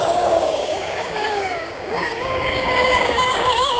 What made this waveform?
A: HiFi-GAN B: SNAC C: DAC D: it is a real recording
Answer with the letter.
C